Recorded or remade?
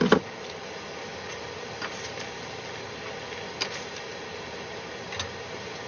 recorded